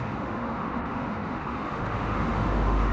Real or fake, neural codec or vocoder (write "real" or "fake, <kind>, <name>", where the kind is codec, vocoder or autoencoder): fake, autoencoder, DAC-VAE